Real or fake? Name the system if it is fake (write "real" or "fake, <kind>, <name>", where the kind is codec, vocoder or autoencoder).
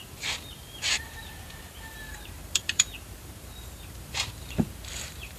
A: fake, vocoder, BigVGAN v2